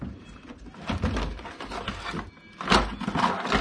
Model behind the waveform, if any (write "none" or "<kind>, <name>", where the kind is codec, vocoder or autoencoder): none